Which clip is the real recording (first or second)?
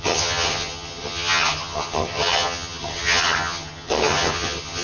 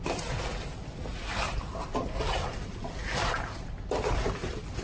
second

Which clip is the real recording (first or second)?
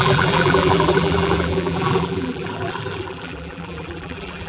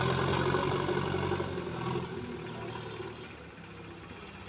second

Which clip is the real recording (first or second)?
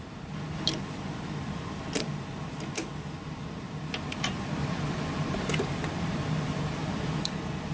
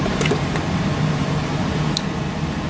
second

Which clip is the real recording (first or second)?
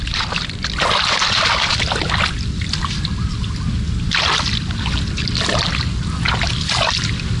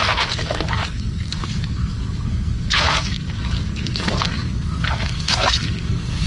first